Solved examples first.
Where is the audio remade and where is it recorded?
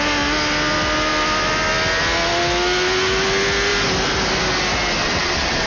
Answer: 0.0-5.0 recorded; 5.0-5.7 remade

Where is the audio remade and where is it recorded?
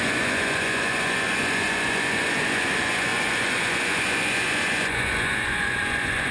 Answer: 0.0-6.3 remade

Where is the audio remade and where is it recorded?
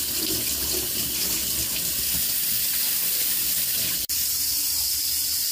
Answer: 0.0-2.8 recorded; 2.8-4.6 remade; 4.6-5.5 recorded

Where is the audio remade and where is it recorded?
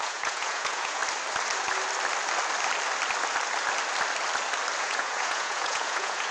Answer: 0.0-1.0 remade; 1.0-4.8 recorded; 4.8-6.3 remade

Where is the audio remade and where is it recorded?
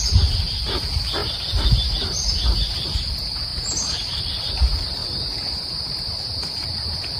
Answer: 0.0-3.5 recorded; 3.5-4.4 remade; 4.4-5.0 recorded; 5.0-7.2 remade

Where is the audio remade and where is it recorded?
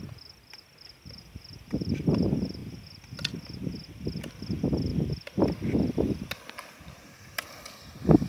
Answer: 0.0-8.3 recorded